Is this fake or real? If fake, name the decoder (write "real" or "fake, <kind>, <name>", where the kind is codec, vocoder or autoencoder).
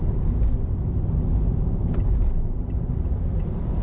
real